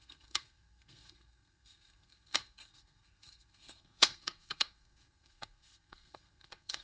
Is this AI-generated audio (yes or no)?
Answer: yes